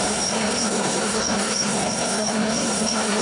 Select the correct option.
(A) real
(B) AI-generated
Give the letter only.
B